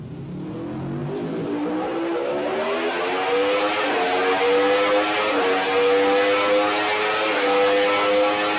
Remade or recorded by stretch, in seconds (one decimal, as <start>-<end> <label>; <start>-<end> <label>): 0.0-1.0 recorded; 1.0-2.3 remade; 2.3-8.6 recorded